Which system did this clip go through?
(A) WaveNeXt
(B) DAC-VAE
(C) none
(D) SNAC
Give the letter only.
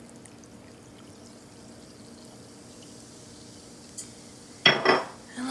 C